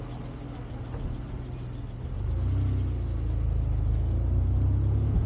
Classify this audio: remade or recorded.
recorded